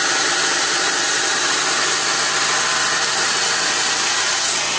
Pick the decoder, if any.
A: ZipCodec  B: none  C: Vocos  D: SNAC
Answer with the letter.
B